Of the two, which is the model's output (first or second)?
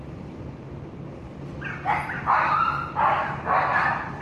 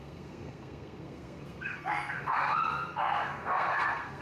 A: second